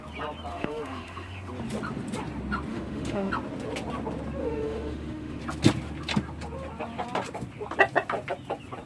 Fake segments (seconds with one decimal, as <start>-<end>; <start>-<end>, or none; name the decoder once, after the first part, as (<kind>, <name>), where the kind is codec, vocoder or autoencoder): 0.5-1.5 (autoencoder, DAC-VAE); 2.7-3.3; 4.4-5.4